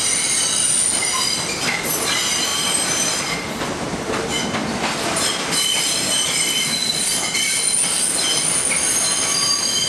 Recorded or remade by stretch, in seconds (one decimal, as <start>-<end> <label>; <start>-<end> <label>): 0.0-2.5 recorded; 2.5-3.2 remade; 3.2-4.6 recorded; 4.6-6.1 remade; 6.1-9.9 recorded